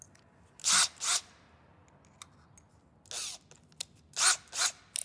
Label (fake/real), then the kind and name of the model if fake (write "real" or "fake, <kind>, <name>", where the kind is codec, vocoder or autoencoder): real